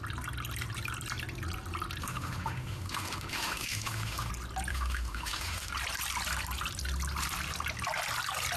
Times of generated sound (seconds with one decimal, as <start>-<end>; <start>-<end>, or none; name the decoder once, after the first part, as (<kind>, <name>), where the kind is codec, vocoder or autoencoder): 2.0-4.3 (autoencoder, DAC-VAE); 4.7-5.7